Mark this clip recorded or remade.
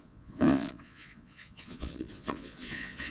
remade